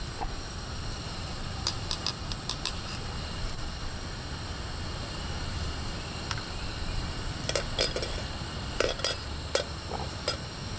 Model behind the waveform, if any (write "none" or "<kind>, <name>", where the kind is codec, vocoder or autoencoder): none